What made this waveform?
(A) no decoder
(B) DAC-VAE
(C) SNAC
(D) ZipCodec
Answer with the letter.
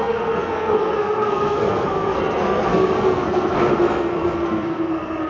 C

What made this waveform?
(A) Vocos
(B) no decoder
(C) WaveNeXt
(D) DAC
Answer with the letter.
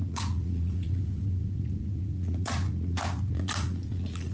A